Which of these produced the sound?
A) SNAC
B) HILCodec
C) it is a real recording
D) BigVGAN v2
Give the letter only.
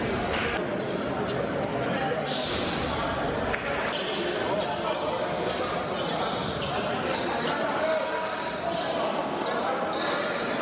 C